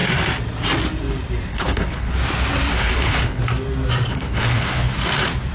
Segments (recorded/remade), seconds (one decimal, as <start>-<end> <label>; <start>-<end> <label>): 0.0-1.5 recorded; 1.5-2.1 remade; 2.1-2.7 recorded; 2.7-3.4 remade; 3.4-4.1 recorded; 4.1-4.9 remade; 4.9-5.5 recorded